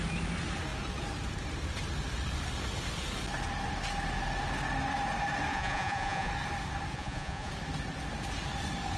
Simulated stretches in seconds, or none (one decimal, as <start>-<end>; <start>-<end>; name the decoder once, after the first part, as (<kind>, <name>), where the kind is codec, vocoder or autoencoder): 5.5-6.3 (vocoder, Vocos); 6.9-7.5